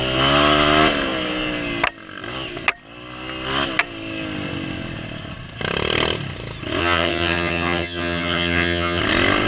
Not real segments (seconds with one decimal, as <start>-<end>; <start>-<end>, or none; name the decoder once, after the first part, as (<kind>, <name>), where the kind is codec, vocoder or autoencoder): 6.8-9.0 (vocoder, HiFi-GAN)